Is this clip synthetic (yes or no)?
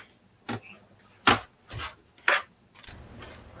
no